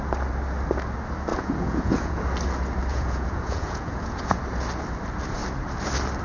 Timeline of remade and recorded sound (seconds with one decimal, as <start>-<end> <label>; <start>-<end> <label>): 0.0-1.3 recorded; 1.3-2.2 remade; 2.2-2.9 recorded; 2.9-4.4 remade; 4.4-6.2 recorded